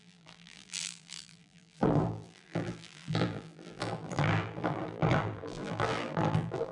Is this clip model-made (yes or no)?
yes